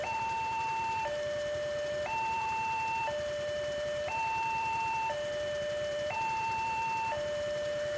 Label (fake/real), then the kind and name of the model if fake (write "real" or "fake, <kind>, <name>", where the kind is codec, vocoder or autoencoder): fake, vocoder, BigVGAN v2